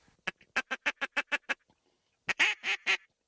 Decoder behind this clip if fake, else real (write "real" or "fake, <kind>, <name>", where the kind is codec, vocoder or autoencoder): real